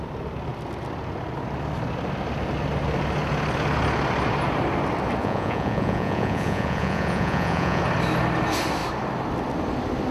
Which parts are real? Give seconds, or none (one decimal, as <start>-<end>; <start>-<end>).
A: 0.0-5.2; 7.8-10.1